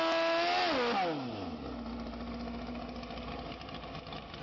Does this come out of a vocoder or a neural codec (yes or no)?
no